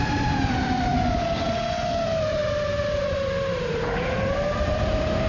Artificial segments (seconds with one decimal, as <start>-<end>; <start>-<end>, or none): 0.0-0.9; 1.8-5.3